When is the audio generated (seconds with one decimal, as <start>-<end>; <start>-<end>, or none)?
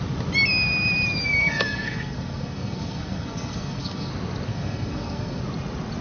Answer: 1.4-4.1; 4.5-5.4